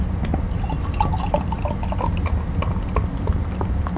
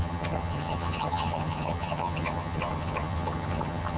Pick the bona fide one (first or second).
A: first